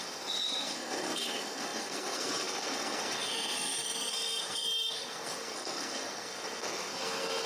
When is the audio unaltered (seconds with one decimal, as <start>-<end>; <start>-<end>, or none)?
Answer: none